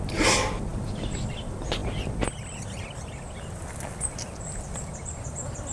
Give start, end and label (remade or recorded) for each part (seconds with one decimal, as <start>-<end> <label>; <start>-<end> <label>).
0.0-5.7 recorded